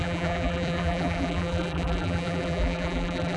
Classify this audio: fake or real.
fake